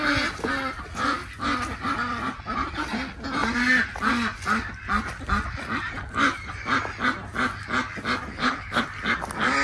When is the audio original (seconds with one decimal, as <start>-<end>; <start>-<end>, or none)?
0.0-8.3; 8.8-9.6